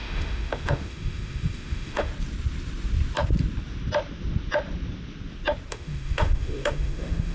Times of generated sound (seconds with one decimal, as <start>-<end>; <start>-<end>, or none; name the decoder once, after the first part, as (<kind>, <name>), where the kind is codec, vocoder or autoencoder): 0.0-2.1 (autoencoder, DAC-VAE); 5.7-7.3